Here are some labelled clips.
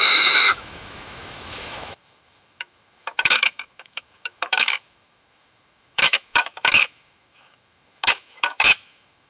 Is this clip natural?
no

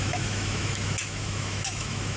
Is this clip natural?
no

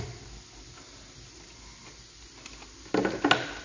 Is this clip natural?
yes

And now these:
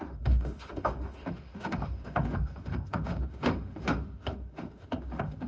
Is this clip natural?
no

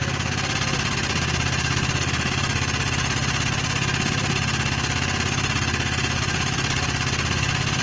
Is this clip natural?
yes